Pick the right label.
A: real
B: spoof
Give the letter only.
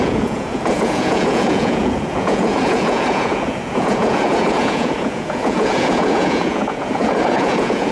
B